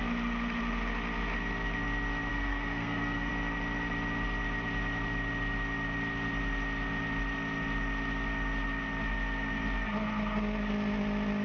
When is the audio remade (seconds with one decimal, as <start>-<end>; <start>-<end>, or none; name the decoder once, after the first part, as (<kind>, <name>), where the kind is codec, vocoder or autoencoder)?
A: 2.3-3.3 (codec, SNAC)